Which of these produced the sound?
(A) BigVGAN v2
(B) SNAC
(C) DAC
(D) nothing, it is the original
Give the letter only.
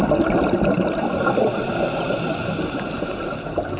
D